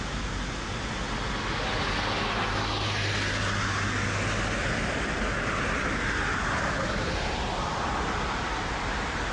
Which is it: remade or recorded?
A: recorded